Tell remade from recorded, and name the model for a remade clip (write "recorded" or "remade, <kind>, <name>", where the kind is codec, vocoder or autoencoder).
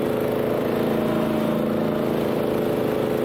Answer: recorded